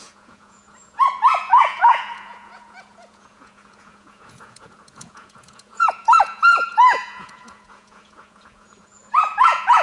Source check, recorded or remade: remade